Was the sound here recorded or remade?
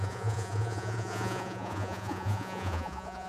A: remade